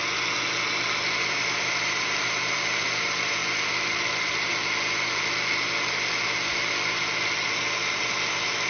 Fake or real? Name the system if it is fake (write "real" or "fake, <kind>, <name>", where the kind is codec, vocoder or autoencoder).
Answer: real